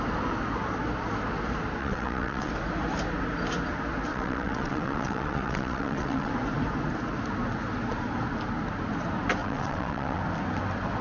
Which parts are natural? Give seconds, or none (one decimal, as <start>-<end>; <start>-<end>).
0.0-1.8; 2.5-4.1; 6.3-9.4; 10.2-11.0